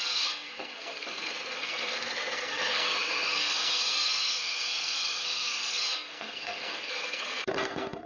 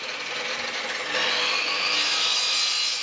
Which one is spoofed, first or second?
first